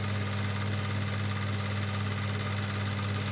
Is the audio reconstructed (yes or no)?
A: no